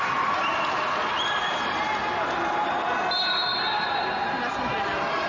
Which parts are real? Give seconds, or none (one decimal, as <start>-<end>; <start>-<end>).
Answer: 0.0-5.3